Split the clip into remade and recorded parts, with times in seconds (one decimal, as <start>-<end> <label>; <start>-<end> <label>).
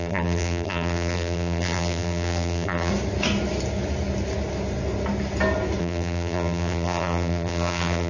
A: 0.0-2.9 remade; 2.9-5.8 recorded; 5.8-8.1 remade